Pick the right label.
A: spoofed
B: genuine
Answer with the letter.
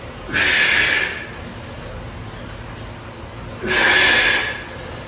B